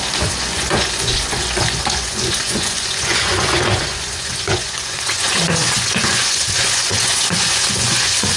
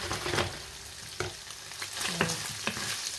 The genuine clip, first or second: second